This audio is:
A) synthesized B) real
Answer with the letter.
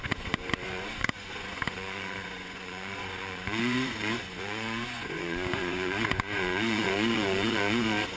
A